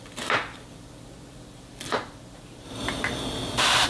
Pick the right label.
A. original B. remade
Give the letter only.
B